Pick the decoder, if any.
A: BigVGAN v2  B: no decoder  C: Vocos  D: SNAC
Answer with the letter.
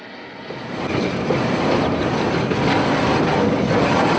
B